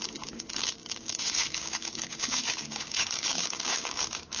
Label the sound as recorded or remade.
remade